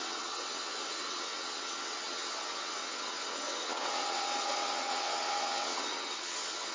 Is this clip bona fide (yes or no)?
no